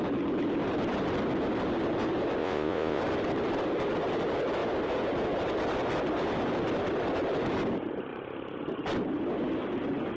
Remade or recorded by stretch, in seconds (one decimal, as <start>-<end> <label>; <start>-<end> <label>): 0.0-2.4 recorded; 2.4-3.0 remade; 3.0-10.2 recorded